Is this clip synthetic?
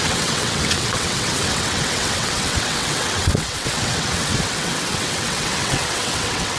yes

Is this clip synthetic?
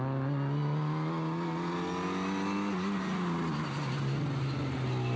no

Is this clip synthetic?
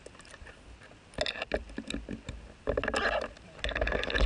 no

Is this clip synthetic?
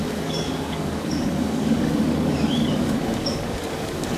yes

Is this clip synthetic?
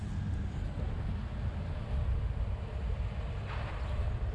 no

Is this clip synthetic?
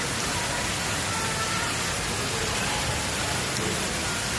no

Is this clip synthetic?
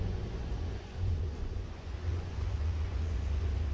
yes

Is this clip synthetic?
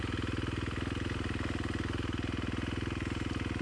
no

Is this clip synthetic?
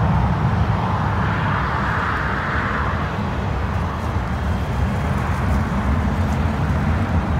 no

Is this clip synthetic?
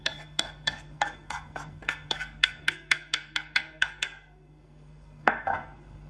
yes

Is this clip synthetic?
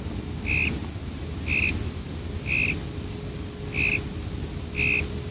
no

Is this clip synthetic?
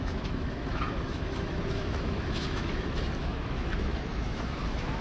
yes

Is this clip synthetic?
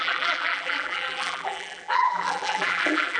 yes